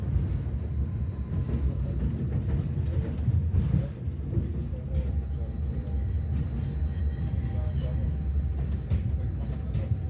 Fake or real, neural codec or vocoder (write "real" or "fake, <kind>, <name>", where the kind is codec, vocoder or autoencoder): real